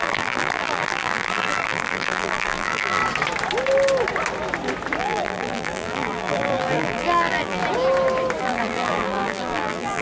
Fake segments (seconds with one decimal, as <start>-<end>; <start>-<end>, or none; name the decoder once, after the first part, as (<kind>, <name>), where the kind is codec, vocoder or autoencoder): 0.0-3.0 (vocoder, BigVGAN v2); 5.0-7.6; 8.4-10.0